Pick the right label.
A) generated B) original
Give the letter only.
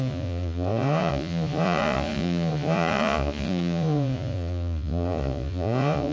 A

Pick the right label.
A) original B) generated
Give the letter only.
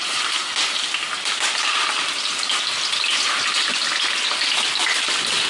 A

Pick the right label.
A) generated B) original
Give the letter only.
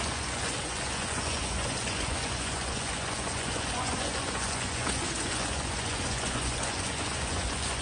A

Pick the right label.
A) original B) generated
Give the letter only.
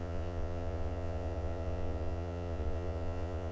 B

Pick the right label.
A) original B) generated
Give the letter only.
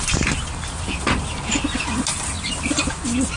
A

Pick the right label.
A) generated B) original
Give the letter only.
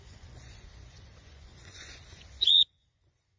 A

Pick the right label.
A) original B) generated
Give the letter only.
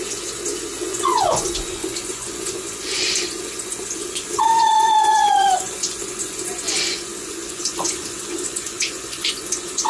B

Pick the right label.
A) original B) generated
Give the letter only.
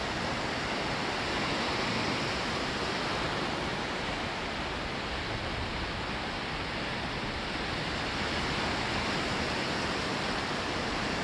A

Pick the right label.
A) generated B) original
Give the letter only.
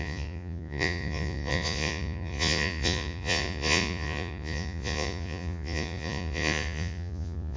A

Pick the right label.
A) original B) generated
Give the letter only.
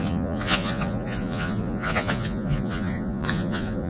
B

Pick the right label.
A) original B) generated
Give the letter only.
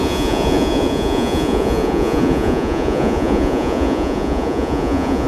B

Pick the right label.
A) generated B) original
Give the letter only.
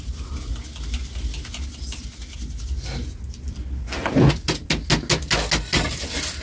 B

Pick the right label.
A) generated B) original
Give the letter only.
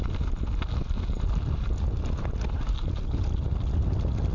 B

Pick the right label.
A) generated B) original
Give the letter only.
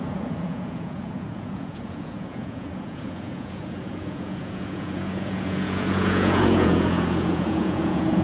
A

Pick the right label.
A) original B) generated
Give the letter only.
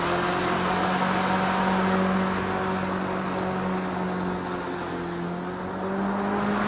A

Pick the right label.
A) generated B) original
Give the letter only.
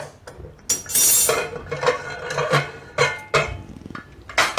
B